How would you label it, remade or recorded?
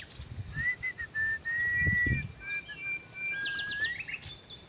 recorded